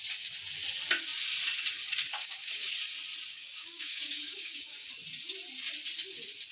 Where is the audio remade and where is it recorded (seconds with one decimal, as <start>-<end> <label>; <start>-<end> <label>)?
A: 0.0-2.1 recorded; 2.1-2.7 remade; 2.7-3.3 recorded; 3.3-4.9 remade; 4.9-6.5 recorded